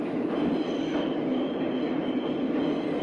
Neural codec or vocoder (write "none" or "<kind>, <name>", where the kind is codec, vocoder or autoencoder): none